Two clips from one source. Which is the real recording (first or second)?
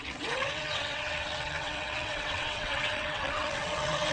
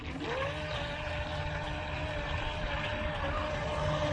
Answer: second